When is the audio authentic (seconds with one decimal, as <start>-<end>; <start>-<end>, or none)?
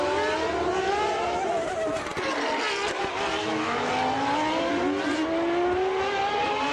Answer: 0.0-3.4; 3.9-6.7